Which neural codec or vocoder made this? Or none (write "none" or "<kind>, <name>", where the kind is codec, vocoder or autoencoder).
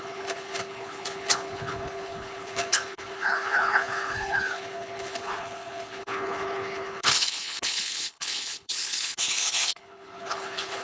codec, HILCodec